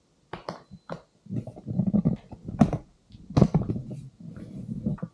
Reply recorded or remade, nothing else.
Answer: recorded